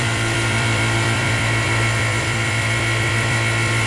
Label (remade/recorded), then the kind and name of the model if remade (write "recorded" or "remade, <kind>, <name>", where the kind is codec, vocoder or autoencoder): remade, vocoder, BigVGAN v2